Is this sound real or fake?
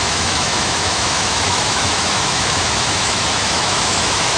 fake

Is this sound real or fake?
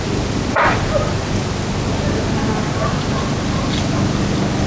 real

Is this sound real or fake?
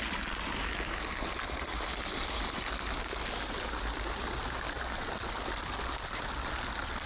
real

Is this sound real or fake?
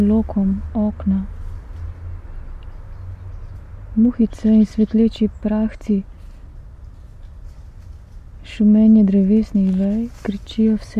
real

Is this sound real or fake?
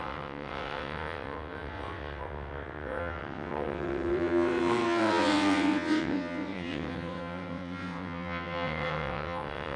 fake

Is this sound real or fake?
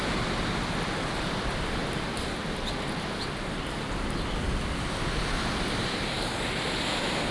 real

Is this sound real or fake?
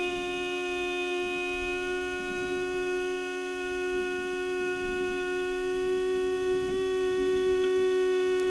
real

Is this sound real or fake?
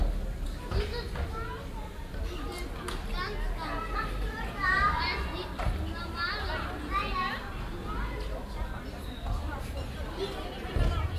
real